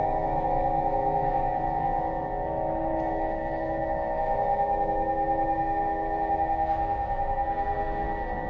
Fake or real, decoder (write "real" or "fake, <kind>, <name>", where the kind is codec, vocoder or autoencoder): fake, autoencoder, DAC-VAE